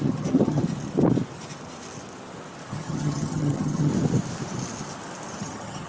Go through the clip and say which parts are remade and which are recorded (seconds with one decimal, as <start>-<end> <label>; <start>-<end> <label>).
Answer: 0.0-0.6 remade; 0.6-2.7 recorded; 2.7-3.9 remade; 3.9-5.4 recorded; 5.4-5.9 remade